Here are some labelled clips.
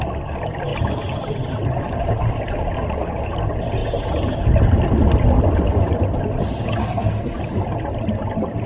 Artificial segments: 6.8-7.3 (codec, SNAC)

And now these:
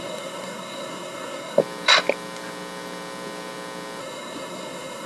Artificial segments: 0.0-1.6 (codec, SNAC); 4.0-5.1

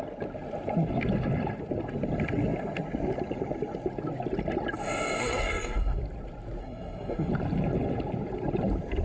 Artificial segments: 5.2-6.0 (codec, SNAC); 6.6-7.3

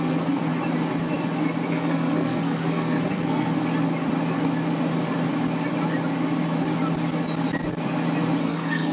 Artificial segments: 0.0-0.5 (codec, SNAC); 1.7-3.6; 8.4-8.9

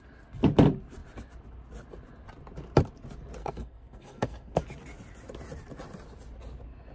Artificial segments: 3.4-4.6 (codec, SNAC)

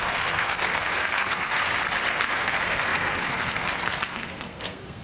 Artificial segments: 0.0-1.6 (codec, SNAC); 2.1-5.0